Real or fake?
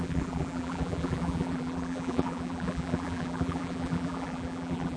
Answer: fake